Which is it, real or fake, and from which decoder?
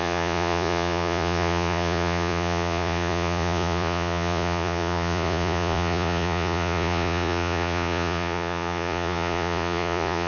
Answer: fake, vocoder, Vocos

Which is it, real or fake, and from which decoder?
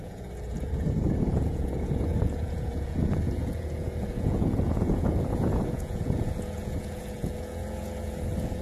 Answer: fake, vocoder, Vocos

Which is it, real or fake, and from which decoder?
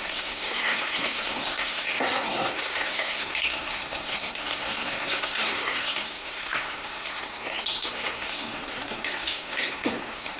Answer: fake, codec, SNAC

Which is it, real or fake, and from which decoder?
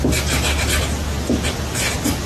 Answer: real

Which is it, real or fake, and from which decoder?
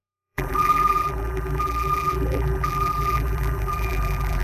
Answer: fake, vocoder, BigVGAN v2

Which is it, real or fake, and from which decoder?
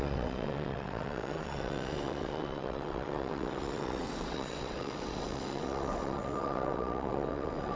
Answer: fake, vocoder, WaveNeXt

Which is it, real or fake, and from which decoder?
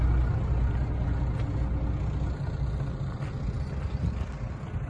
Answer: real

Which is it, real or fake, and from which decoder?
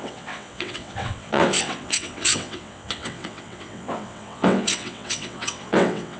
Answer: fake, vocoder, WaveNeXt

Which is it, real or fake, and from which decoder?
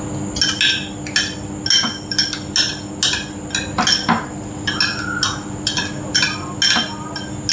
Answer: real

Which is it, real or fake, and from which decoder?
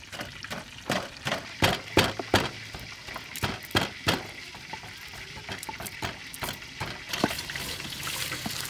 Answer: real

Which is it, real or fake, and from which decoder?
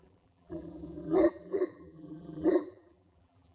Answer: fake, vocoder, BigVGAN v2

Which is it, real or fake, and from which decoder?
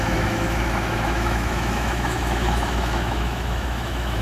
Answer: fake, autoencoder, DAC-VAE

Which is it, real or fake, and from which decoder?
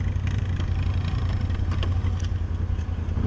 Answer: real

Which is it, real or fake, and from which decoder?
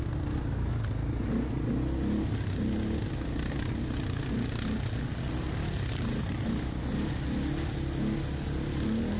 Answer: real